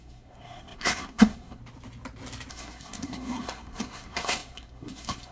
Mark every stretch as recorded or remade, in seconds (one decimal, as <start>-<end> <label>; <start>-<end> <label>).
0.0-1.6 remade; 1.6-2.5 recorded; 2.5-5.3 remade